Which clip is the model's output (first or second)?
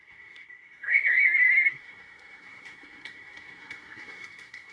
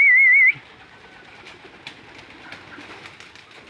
first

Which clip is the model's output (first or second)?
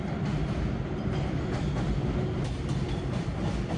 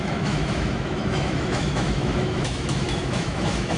second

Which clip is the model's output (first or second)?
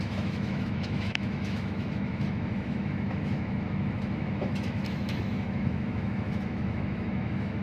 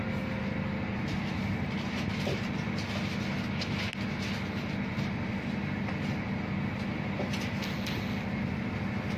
first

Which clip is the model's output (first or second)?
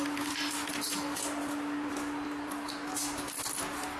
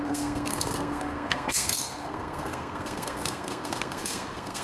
second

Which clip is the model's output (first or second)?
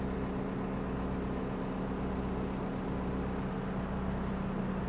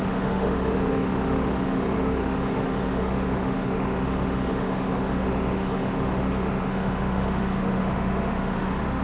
second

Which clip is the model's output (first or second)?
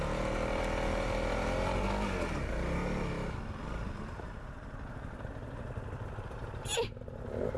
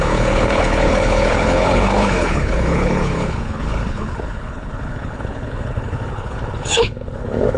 second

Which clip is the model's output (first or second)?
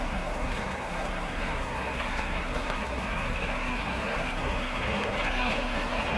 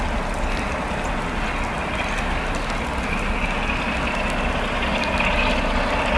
first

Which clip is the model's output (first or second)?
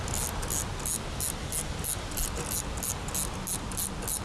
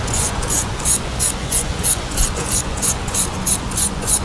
second